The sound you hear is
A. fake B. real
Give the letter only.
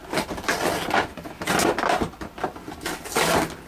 B